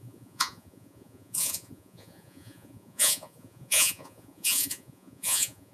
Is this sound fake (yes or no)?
yes